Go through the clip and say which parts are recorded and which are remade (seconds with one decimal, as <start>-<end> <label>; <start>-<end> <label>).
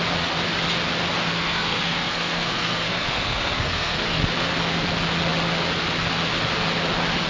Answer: 0.0-1.2 recorded; 1.2-4.2 remade; 4.2-7.3 recorded